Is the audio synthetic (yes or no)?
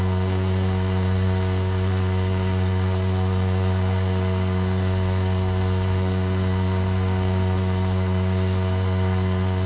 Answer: yes